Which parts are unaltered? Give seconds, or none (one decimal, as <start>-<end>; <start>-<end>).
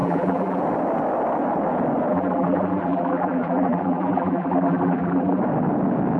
0.6-2.1; 5.4-6.2